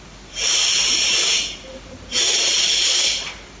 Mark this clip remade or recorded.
remade